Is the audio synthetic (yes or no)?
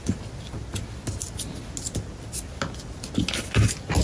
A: no